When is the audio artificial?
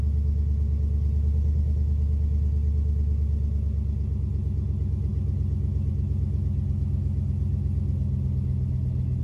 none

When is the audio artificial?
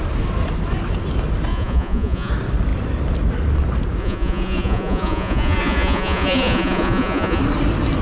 1.5-2.3 (vocoder, Vocos); 4.0-7.4